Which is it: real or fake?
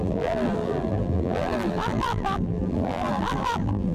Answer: fake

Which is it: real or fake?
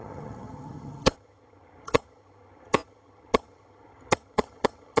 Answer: fake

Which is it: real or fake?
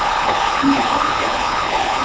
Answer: fake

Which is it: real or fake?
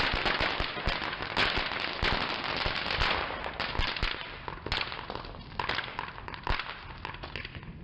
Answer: real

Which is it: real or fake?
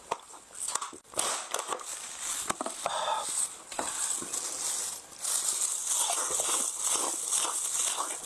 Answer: real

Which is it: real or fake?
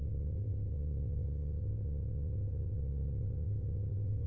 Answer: fake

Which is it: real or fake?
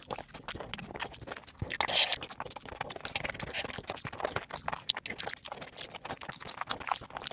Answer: real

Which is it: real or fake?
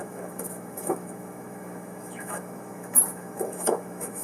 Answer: fake